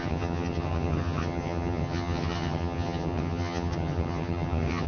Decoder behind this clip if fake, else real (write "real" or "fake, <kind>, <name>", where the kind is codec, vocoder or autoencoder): fake, vocoder, HiFi-GAN